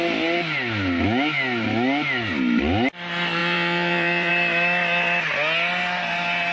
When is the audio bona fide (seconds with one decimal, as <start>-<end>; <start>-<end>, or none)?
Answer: 0.0-3.4; 4.3-6.5